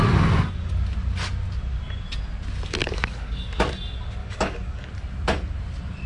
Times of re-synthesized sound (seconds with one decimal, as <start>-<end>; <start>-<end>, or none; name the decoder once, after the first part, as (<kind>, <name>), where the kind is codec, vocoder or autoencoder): 2.8-3.7 (codec, DAC); 4.2-4.9